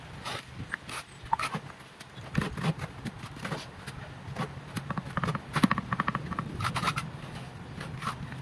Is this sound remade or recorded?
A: recorded